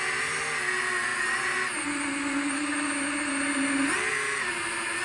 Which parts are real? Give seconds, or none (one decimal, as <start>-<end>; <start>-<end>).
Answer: 0.0-5.0